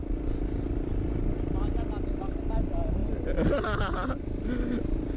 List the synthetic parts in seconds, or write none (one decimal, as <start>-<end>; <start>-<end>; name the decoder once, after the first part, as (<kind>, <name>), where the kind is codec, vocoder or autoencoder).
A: none